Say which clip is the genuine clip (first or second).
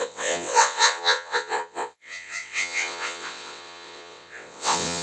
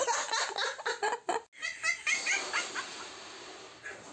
second